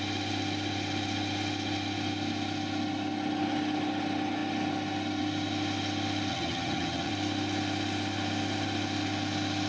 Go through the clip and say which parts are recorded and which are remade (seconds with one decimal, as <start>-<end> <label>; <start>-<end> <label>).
0.0-6.3 recorded; 6.3-7.1 remade; 7.1-9.7 recorded